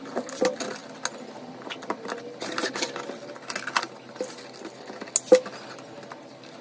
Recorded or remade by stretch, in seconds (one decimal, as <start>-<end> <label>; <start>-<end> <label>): 0.0-6.6 recorded